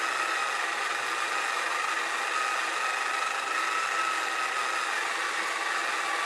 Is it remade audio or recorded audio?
recorded